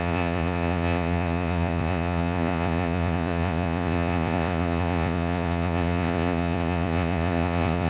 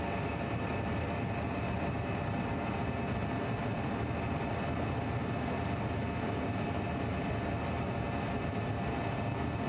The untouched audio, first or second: second